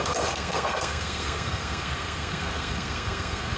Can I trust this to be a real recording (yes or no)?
no